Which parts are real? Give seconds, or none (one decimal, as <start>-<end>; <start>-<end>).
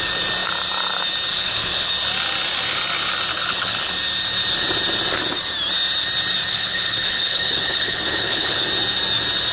0.0-1.3; 1.9-3.3; 3.9-6.5; 8.6-9.5